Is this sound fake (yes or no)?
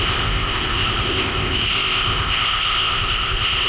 yes